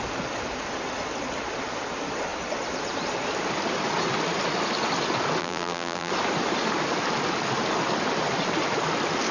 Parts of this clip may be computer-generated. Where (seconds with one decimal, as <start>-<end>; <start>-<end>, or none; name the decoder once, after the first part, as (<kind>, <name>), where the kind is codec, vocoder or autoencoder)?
5.4-6.1 (vocoder, BigVGAN v2)

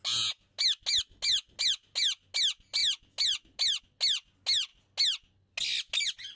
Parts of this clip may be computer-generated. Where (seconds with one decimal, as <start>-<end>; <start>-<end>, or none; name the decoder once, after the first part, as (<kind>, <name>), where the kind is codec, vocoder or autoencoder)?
none

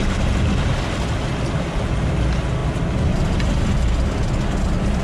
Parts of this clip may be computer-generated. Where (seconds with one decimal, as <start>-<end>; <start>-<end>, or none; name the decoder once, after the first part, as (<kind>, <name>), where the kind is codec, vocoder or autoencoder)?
none